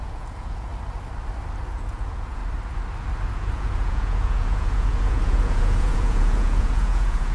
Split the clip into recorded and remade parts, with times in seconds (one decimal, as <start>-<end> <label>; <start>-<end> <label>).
0.0-0.7 remade; 0.7-1.7 recorded; 1.7-2.4 remade; 2.4-3.3 recorded; 3.3-7.3 remade